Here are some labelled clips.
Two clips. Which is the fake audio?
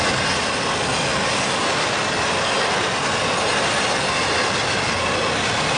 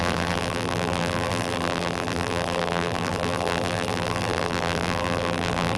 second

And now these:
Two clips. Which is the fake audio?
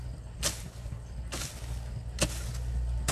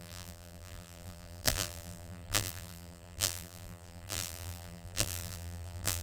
second